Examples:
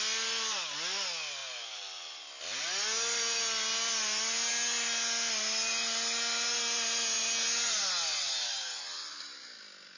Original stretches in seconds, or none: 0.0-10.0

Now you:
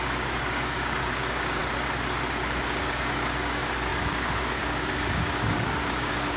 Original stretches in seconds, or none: 1.6-2.8

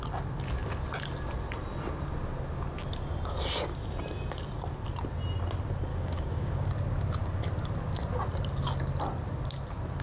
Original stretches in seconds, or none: 0.0-5.9; 6.7-10.0

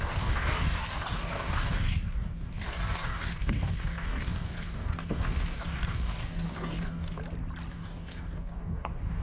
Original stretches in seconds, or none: 7.2-7.7

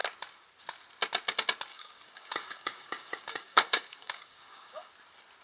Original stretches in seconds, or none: 0.0-1.7; 4.9-5.4

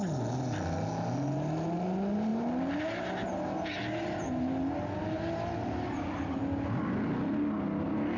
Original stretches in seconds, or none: 0.0-8.2

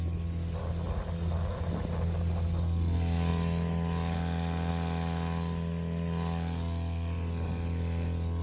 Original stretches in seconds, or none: 0.0-8.4

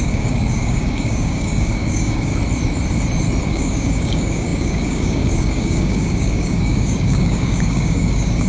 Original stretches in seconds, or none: 2.3-3.4